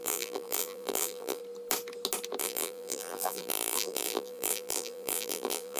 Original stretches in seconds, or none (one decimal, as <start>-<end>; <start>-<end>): 1.4-2.4